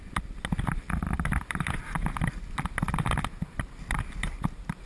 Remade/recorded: recorded